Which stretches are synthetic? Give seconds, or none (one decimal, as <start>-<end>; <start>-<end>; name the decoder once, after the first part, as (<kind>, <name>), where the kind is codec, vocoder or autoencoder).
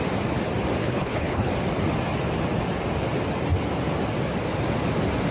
0.8-1.5 (codec, HILCodec)